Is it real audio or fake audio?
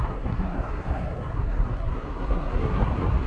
fake